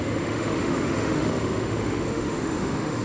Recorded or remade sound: remade